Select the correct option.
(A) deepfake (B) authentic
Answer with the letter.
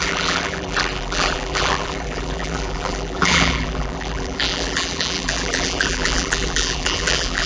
A